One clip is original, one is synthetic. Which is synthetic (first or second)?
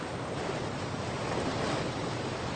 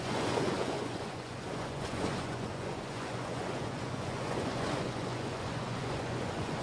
second